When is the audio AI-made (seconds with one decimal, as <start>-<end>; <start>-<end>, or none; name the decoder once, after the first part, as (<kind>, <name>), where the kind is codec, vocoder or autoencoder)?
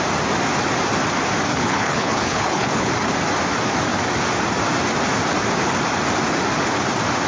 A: 1.5-2.9 (codec, HILCodec)